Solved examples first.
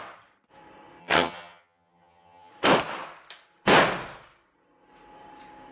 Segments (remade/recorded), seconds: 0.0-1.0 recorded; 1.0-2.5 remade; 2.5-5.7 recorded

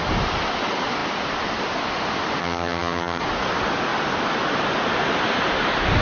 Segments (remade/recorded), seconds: 0.0-2.4 recorded; 2.4-3.2 remade; 3.2-6.0 recorded